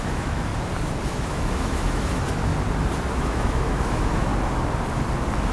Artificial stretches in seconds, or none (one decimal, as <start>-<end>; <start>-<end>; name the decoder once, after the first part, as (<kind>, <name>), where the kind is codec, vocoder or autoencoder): 0.0-0.5 (autoencoder, DAC-VAE); 1.1-2.5; 3.1-4.3